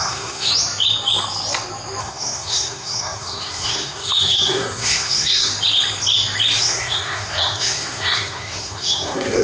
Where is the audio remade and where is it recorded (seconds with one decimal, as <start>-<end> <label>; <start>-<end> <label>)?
0.0-0.5 remade; 0.5-2.0 recorded; 2.0-5.5 remade; 5.5-6.6 recorded; 6.6-9.4 remade